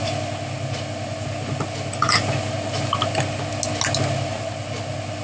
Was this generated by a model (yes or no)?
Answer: no